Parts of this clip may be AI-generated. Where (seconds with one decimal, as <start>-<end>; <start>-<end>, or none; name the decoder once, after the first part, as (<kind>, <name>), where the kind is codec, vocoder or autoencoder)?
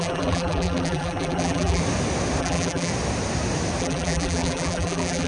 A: 0.0-1.8 (vocoder, BigVGAN v2); 2.4-2.9; 3.8-5.3